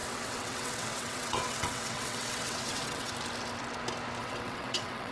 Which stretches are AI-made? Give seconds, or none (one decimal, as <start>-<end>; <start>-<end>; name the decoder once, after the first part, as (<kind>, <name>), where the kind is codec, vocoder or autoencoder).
0.0-3.1 (vocoder, WaveNeXt); 4.2-5.1